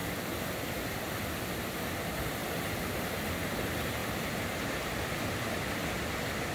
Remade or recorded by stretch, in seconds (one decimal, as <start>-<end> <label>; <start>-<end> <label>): 0.0-6.5 recorded